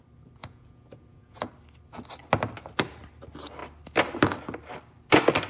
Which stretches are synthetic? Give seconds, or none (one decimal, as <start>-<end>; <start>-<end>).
0.4-1.5